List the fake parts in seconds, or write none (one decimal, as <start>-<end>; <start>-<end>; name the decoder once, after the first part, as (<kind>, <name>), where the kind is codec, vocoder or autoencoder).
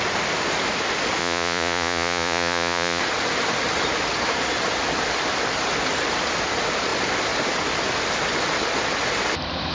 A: 1.2-3.0 (vocoder, Vocos)